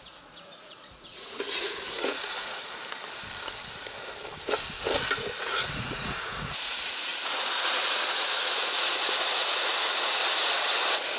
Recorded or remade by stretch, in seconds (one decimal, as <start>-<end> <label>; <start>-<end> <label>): 0.0-2.8 remade; 2.8-5.4 recorded; 5.4-10.2 remade; 10.2-11.2 recorded